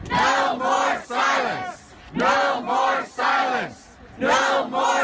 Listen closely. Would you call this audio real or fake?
real